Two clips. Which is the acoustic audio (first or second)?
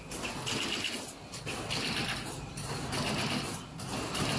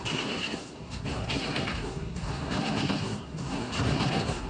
first